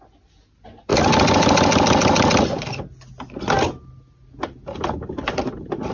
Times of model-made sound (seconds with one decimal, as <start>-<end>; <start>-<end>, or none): none